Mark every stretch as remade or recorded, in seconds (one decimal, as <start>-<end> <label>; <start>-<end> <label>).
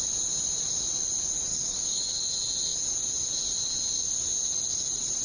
0.0-1.5 recorded; 1.5-2.2 remade; 2.2-5.2 recorded